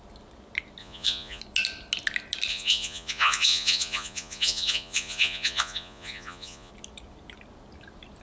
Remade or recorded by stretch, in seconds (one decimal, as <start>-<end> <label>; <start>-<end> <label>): 0.0-0.8 recorded; 0.8-1.4 remade; 1.4-2.5 recorded; 2.5-6.7 remade; 6.7-8.2 recorded